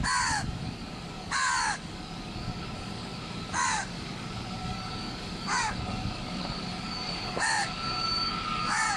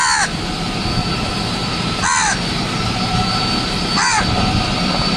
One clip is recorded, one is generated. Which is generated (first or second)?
first